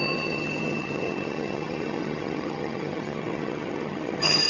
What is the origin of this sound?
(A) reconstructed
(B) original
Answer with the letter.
A